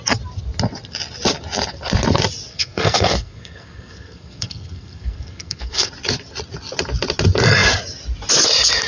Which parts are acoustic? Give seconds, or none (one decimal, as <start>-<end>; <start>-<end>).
0.0-2.5; 5.9-8.9